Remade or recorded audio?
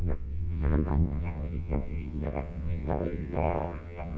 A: remade